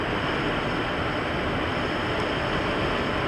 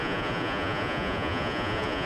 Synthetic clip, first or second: second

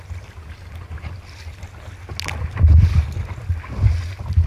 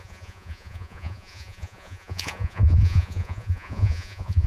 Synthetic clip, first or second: second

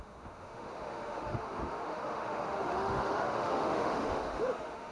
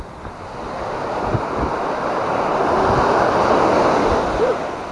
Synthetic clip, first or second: first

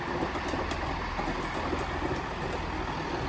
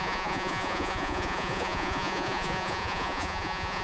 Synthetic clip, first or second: second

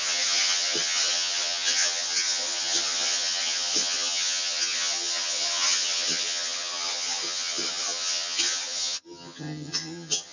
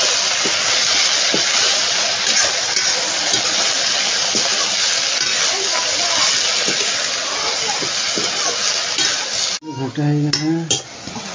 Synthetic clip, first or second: first